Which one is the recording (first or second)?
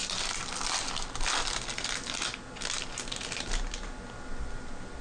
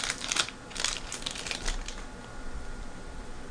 first